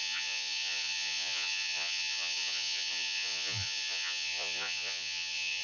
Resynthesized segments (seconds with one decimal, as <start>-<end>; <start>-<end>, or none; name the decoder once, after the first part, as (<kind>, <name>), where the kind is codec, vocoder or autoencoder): 0.0-5.6 (vocoder, Vocos)